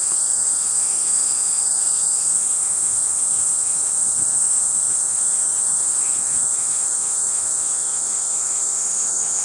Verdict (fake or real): fake